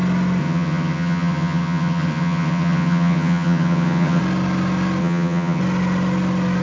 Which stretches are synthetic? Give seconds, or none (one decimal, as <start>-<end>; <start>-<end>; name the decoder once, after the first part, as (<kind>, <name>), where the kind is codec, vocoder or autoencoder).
0.4-4.2 (vocoder, HiFi-GAN); 5.0-5.6